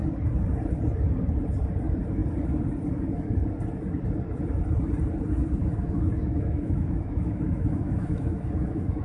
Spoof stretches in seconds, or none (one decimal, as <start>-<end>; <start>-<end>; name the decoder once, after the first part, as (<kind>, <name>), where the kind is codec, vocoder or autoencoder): 5.6-9.0 (autoencoder, DAC-VAE)